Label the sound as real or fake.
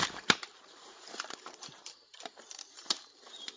fake